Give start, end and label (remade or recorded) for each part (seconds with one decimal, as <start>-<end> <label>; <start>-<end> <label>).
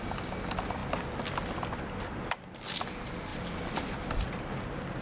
0.0-3.3 recorded; 3.3-4.6 remade; 4.6-5.0 recorded